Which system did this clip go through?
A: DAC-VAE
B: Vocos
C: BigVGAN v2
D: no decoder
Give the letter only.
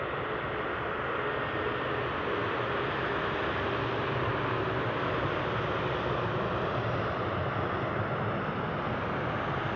D